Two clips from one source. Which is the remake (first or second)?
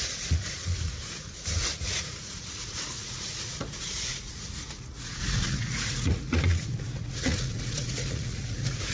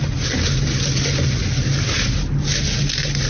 first